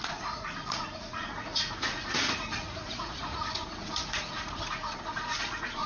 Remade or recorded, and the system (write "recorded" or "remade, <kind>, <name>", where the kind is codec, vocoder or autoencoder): remade, vocoder, Vocos